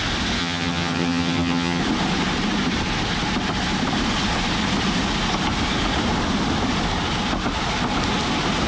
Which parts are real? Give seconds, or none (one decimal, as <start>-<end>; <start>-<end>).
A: 0.0-0.4; 1.8-8.7

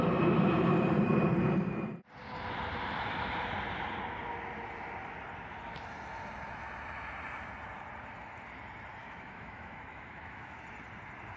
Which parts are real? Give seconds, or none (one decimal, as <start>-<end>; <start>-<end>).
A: 0.0-9.0; 10.6-11.4